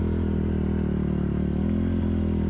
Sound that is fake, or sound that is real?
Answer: real